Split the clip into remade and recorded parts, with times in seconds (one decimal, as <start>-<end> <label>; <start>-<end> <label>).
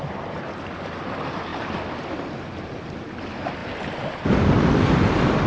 0.0-5.5 recorded